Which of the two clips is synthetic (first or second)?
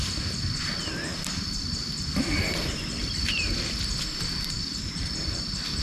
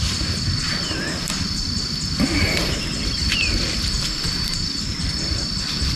second